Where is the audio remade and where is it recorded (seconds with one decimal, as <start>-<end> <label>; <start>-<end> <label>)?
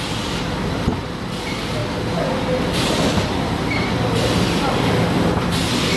0.0-6.0 recorded